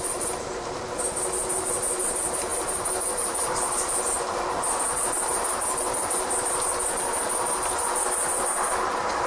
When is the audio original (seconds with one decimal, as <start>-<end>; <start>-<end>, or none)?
0.0-9.3